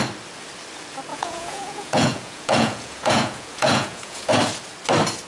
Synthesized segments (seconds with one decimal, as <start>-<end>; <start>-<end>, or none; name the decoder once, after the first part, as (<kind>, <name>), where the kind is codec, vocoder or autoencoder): 1.1-4.3 (vocoder, Vocos)